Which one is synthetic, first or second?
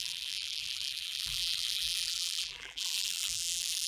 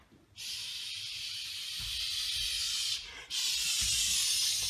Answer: first